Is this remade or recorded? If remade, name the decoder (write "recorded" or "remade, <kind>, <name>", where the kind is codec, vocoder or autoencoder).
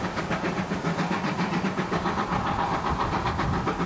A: recorded